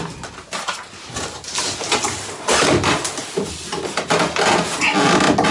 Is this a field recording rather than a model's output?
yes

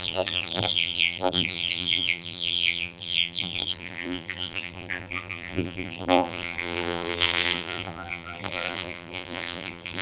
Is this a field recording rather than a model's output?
no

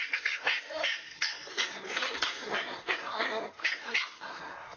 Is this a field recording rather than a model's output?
no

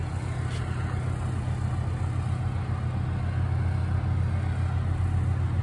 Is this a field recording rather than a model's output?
yes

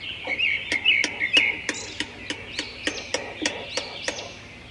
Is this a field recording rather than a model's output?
yes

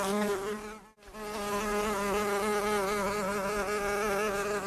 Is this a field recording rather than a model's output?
yes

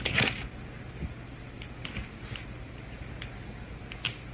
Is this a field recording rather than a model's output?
yes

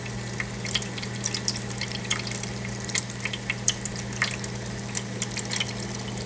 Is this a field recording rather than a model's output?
no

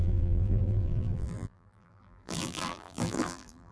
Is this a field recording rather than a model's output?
no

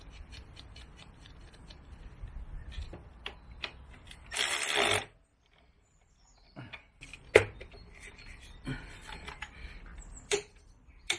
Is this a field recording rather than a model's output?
yes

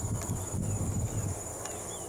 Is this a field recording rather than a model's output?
yes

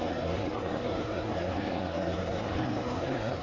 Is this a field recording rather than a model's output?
no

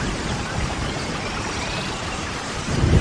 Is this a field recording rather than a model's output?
no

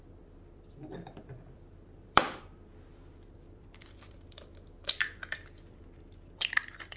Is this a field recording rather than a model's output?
no